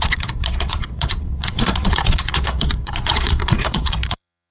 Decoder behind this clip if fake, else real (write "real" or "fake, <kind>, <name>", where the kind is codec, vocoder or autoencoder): fake, vocoder, Vocos